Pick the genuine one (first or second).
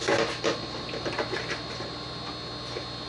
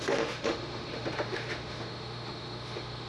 first